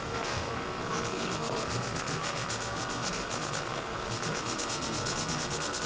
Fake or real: fake